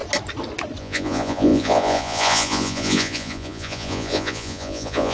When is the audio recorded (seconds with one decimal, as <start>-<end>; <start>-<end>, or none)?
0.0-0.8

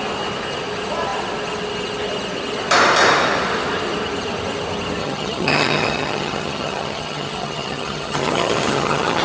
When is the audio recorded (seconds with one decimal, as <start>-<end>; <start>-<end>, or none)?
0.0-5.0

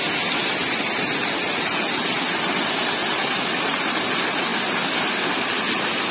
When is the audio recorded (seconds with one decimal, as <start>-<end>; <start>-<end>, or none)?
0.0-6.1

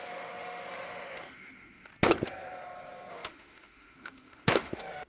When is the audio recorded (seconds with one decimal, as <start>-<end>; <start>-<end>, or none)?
1.9-3.1

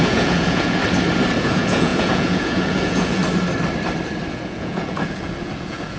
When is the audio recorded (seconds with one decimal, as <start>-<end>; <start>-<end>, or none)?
0.8-1.4; 3.2-4.3

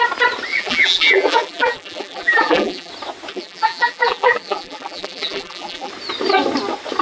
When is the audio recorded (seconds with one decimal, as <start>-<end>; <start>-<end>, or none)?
0.0-0.5; 2.9-3.3; 5.9-7.0

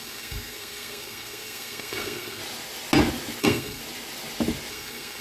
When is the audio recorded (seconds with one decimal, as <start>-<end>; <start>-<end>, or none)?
2.4-3.4; 3.8-4.7

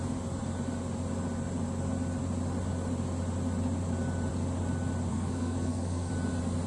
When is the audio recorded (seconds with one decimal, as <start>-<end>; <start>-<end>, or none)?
0.0-5.1; 6.1-6.7